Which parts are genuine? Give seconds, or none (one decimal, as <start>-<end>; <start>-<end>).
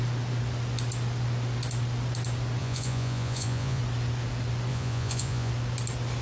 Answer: 0.0-2.6; 3.8-4.7; 5.5-6.2